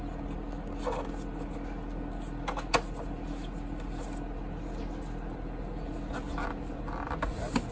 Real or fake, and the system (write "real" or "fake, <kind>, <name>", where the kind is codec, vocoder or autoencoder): real